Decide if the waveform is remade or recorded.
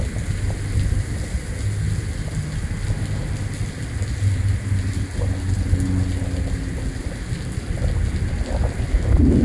recorded